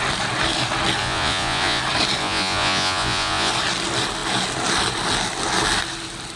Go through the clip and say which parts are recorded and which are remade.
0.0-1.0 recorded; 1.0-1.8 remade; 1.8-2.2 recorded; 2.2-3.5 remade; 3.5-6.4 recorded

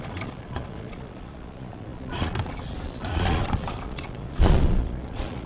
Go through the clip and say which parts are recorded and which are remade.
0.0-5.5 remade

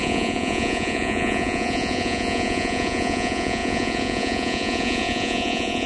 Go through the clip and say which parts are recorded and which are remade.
0.0-5.9 remade

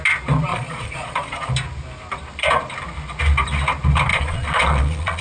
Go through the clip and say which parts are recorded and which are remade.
0.0-0.5 recorded; 0.5-1.5 remade; 1.5-4.1 recorded; 4.1-5.2 remade

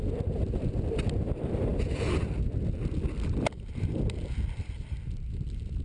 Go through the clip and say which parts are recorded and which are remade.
0.0-5.8 recorded